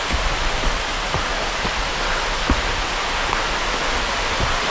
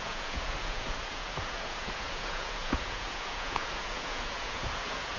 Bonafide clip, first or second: first